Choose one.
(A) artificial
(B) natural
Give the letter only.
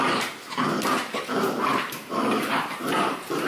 A